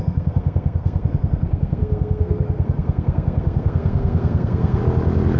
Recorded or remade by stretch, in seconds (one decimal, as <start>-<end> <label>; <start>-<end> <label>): 0.0-4.8 remade; 4.8-5.4 recorded